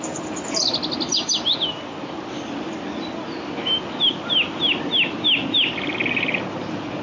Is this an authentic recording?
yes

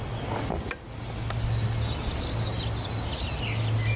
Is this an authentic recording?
yes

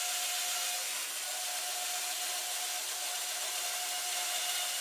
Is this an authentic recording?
yes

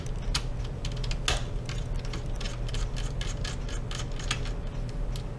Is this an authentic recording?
yes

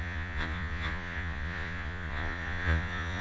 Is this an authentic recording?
no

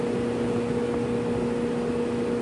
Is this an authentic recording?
yes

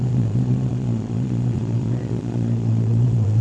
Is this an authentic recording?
no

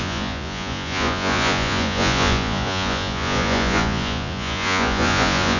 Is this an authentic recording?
no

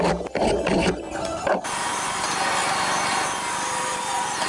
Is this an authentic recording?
yes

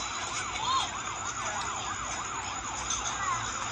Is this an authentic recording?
yes